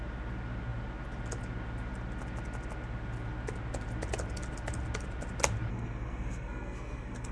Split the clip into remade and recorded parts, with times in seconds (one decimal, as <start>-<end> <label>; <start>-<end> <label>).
0.0-5.7 recorded; 5.7-7.3 remade